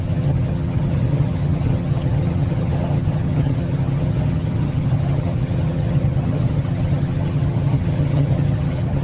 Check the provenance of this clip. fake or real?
fake